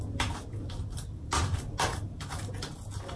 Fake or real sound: real